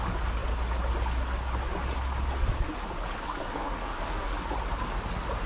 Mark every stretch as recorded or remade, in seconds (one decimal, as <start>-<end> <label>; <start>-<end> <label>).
0.0-3.4 recorded; 3.4-4.3 remade; 4.3-5.5 recorded